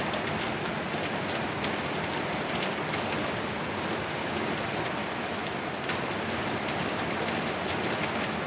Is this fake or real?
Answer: real